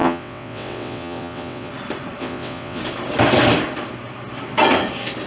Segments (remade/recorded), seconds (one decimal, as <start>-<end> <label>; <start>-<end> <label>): 0.0-1.7 remade; 1.7-2.2 recorded; 2.2-2.8 remade; 2.8-5.3 recorded

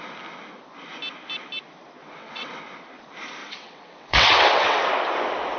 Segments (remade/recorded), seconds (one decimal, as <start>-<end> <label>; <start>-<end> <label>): 0.0-2.0 recorded; 2.0-2.6 remade; 2.6-3.4 recorded; 3.4-4.8 remade; 4.8-5.6 recorded

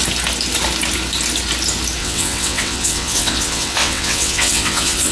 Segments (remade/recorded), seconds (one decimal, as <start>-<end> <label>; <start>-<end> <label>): 0.0-2.0 recorded; 2.0-5.1 remade